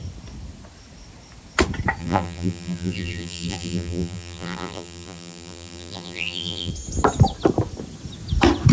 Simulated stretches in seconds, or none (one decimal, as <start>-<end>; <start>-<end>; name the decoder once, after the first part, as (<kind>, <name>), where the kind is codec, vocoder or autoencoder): 2.0-6.7 (vocoder, BigVGAN v2)